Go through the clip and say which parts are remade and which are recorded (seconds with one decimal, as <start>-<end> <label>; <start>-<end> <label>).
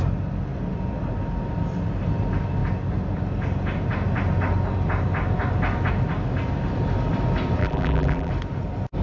0.0-7.6 recorded; 7.6-8.3 remade; 8.3-9.0 recorded